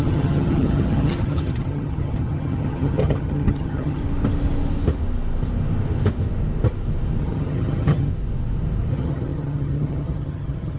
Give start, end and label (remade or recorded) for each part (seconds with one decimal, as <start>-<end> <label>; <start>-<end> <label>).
0.0-4.0 remade; 4.0-7.2 recorded; 7.2-8.1 remade; 8.1-8.9 recorded; 8.9-10.8 remade